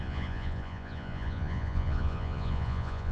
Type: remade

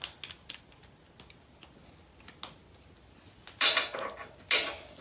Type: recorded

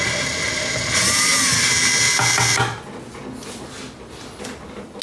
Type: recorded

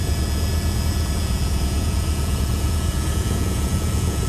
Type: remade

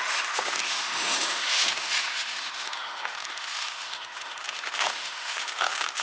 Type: remade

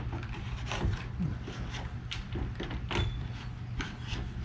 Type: recorded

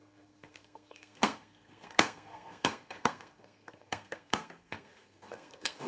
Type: remade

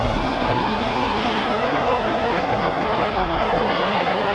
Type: remade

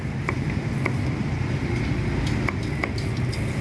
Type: recorded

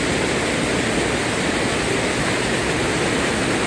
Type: recorded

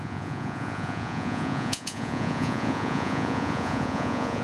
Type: remade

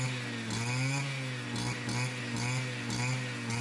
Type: recorded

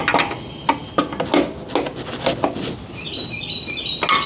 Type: recorded